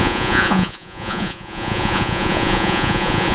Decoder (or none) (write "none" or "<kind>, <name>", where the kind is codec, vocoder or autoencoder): vocoder, Vocos